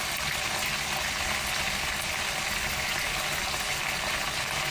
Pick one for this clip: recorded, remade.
recorded